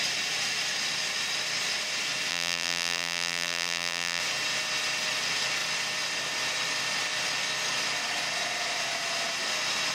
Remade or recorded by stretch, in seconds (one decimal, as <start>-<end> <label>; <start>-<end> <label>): 0.0-2.3 recorded; 2.3-4.2 remade; 4.2-9.9 recorded